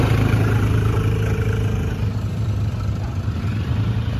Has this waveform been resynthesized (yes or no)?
no